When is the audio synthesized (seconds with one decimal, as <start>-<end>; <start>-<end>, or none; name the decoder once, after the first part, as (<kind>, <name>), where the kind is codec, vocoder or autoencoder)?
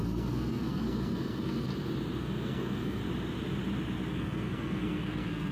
0.0-1.7 (codec, SNAC); 2.2-3.0; 4.1-5.5